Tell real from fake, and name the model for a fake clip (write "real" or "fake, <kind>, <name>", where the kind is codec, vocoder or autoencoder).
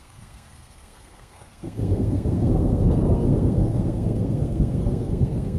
fake, codec, SNAC